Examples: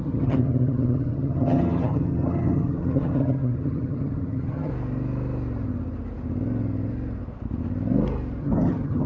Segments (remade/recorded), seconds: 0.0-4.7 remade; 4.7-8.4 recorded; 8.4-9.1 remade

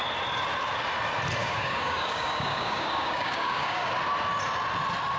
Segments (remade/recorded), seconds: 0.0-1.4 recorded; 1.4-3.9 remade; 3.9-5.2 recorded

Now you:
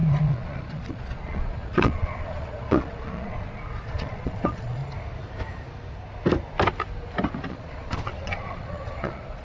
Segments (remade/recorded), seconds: 0.0-4.8 remade; 4.8-7.5 recorded; 7.5-9.4 remade